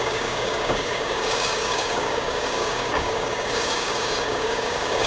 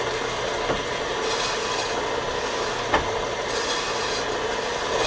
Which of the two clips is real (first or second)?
second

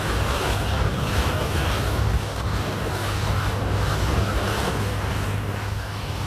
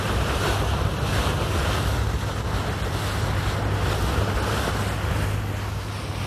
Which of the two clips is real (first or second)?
second